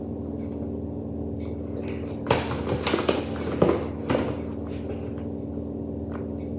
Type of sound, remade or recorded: recorded